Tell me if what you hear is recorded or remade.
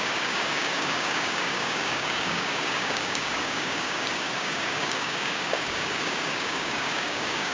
remade